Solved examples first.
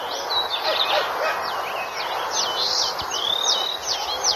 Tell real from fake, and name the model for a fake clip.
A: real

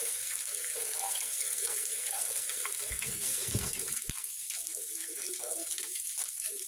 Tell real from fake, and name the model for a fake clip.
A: fake, codec, SNAC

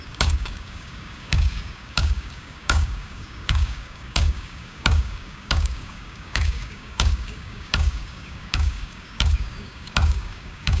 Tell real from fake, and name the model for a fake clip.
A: fake, codec, DAC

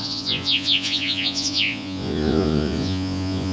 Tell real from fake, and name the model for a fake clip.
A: fake, vocoder, Vocos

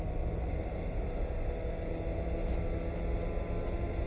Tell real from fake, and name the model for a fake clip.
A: real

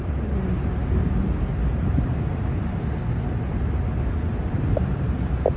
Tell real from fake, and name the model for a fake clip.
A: real